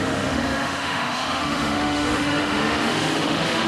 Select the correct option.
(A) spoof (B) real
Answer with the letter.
A